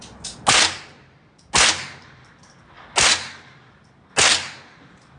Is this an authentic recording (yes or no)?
yes